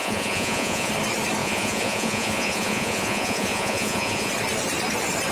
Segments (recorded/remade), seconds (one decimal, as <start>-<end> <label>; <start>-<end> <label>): 0.0-0.9 remade; 0.9-1.4 recorded; 1.4-4.3 remade; 4.3-5.3 recorded